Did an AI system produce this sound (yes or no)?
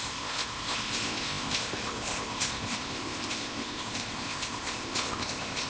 yes